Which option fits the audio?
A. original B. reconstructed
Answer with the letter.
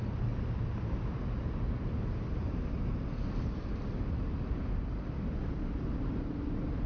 A